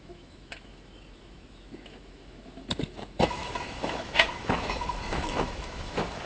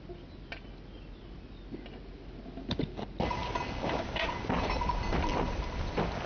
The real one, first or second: second